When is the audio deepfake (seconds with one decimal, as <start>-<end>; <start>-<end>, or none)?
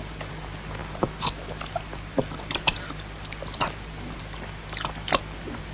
none